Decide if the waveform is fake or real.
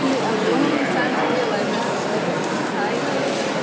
real